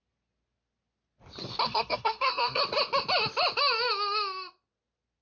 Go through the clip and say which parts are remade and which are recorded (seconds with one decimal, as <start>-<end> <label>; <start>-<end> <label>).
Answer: 0.0-1.6 recorded; 1.6-2.6 remade; 2.6-5.2 recorded